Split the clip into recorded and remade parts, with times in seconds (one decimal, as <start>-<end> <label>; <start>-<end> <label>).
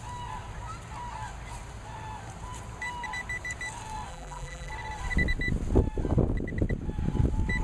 0.0-4.1 recorded; 4.1-4.7 remade; 4.7-7.6 recorded